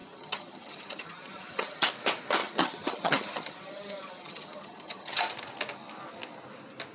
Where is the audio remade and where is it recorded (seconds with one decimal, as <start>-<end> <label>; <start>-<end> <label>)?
0.0-1.9 remade; 1.9-2.4 recorded; 2.4-5.2 remade; 5.2-6.9 recorded

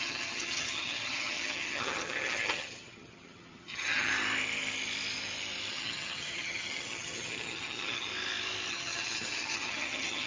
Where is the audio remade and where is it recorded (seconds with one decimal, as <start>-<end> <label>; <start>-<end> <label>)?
0.0-4.1 remade; 4.1-5.7 recorded; 5.7-8.1 remade; 8.1-8.7 recorded; 8.7-10.3 remade